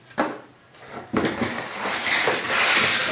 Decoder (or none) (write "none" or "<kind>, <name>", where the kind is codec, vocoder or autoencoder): none